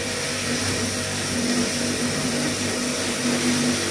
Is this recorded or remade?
recorded